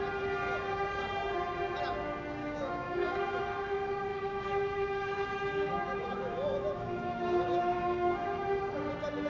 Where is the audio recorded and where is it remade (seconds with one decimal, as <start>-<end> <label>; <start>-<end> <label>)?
0.0-2.4 recorded; 2.4-3.4 remade; 3.4-4.1 recorded; 4.1-8.6 remade; 8.6-9.3 recorded